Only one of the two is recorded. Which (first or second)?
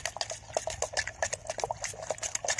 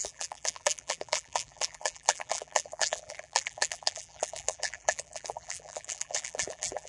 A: first